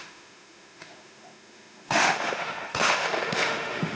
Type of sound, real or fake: fake